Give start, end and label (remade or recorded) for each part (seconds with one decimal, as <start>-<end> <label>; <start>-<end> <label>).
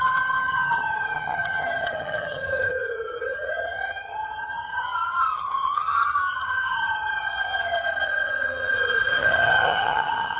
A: 0.0-10.4 remade